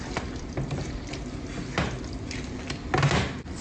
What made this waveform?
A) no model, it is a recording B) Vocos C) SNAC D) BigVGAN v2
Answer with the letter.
A